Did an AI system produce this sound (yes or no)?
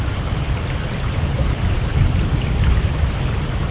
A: no